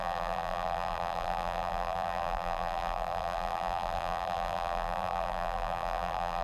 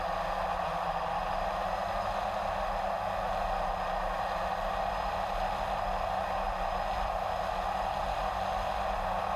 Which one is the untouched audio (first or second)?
second